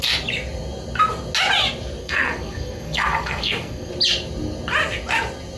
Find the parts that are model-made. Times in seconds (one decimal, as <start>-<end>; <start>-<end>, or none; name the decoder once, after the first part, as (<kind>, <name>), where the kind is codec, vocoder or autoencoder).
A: 2.0-3.9 (codec, SNAC)